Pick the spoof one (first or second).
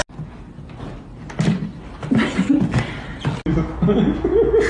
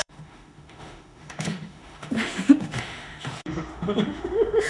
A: second